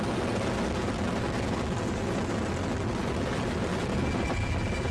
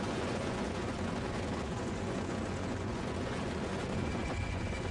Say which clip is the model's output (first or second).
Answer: second